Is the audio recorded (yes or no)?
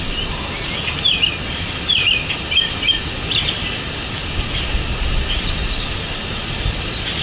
yes